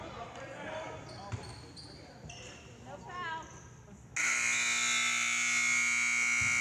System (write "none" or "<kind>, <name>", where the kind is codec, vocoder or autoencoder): none